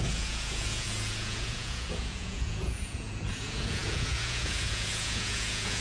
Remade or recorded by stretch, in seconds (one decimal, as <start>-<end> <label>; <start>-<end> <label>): 0.0-5.8 remade